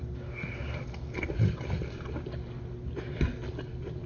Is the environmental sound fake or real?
real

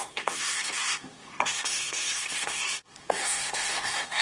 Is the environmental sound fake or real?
fake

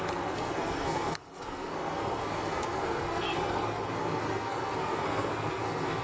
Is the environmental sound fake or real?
fake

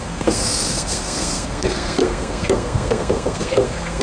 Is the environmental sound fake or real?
fake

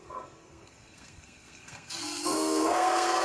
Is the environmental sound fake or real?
fake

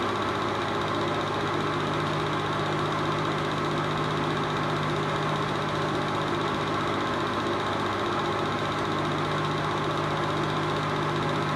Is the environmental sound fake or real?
real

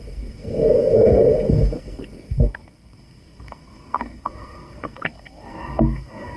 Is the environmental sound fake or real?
fake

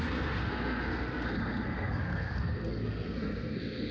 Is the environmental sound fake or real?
fake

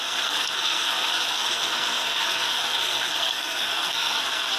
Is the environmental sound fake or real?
fake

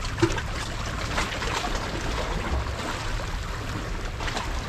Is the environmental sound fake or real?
real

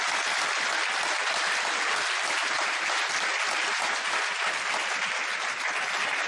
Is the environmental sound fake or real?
real